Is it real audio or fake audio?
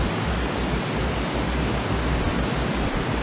real